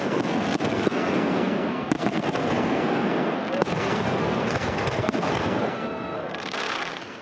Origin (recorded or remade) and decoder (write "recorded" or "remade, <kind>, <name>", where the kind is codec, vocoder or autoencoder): remade, codec, SNAC